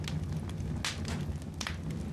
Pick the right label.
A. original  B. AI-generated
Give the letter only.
A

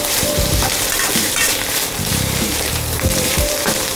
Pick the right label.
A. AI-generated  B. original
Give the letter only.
A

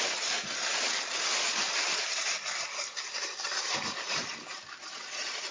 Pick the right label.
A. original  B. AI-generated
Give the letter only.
B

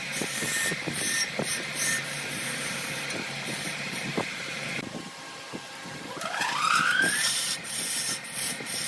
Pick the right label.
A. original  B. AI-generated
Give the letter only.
B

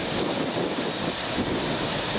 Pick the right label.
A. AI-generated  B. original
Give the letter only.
B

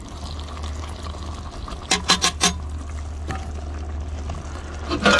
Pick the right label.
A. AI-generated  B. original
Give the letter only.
B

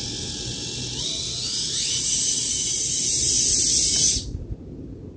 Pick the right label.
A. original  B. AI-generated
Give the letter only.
B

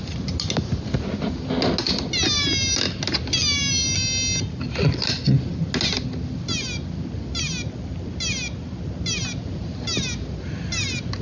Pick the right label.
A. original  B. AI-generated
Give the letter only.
A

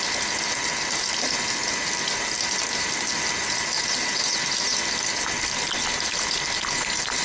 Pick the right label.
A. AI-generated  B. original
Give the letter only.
B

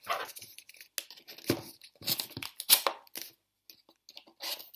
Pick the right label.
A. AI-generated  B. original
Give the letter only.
B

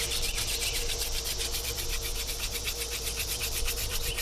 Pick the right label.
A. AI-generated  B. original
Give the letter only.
A